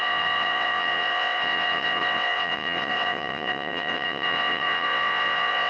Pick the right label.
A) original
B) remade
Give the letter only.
B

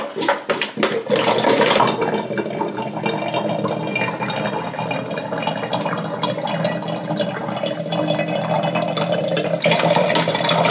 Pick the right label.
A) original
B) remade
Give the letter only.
A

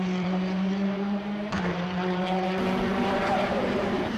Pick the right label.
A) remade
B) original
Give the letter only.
A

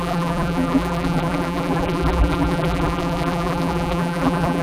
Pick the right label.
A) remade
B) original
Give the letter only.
A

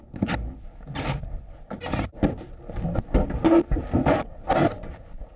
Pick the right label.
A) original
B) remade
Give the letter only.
A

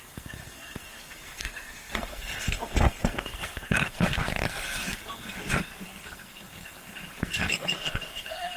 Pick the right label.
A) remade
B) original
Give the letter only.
A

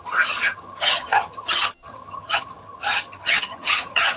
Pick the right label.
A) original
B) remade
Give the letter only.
B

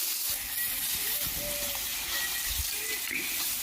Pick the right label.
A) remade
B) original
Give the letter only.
B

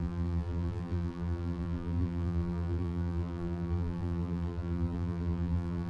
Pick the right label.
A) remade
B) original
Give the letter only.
A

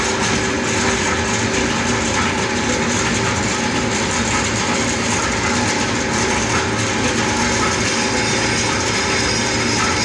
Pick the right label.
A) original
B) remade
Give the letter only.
A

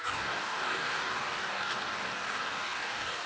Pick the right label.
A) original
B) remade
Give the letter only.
B